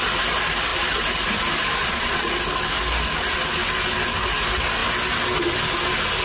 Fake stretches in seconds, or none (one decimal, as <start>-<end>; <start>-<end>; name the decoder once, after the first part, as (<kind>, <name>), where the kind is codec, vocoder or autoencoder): 1.8-2.3 (vocoder, Vocos)